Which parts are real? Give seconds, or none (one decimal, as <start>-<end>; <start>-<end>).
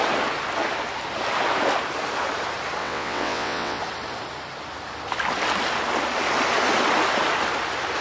0.0-2.8; 3.8-8.0